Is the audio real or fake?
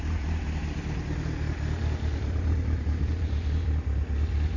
real